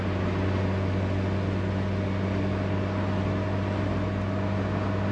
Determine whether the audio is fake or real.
real